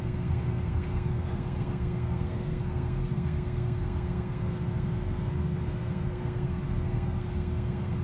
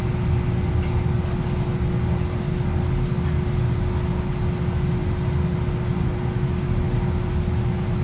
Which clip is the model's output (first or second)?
first